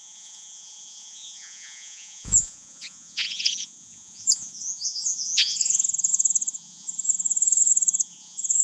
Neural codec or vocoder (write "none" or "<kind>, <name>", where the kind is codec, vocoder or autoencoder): vocoder, Vocos